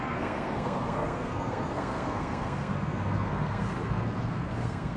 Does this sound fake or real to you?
fake